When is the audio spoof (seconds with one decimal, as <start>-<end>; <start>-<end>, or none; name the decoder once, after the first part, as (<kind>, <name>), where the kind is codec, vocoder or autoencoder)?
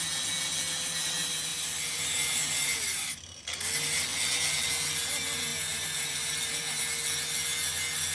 1.5-3.4 (vocoder, BigVGAN v2); 5.5-6.8